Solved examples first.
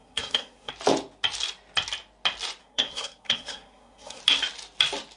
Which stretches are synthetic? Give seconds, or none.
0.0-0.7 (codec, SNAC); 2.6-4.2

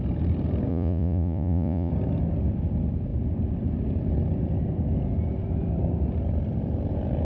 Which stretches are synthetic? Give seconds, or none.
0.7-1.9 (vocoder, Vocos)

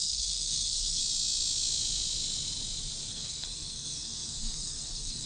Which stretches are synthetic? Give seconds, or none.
0.0-1.0 (codec, SNAC); 3.1-5.3

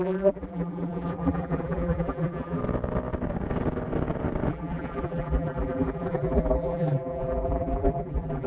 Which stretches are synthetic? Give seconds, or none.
0.0-2.6 (vocoder, BigVGAN v2); 4.5-8.5

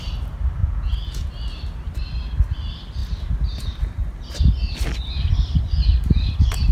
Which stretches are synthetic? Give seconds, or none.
0.6-1.3 (vocoder, Vocos)

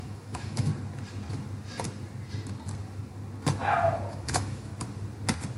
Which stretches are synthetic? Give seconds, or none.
0.0-0.7 (autoencoder, DAC-VAE); 4.1-4.7